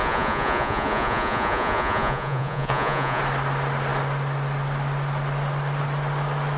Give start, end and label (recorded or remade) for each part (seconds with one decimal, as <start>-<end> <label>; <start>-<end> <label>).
0.0-3.2 remade; 3.2-6.6 recorded